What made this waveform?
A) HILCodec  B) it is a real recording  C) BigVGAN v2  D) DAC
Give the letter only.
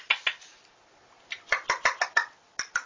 B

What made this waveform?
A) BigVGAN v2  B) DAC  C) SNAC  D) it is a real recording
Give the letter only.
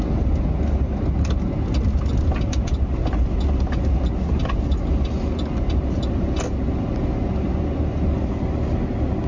D